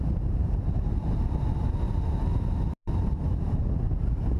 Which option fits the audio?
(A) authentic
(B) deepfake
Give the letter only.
A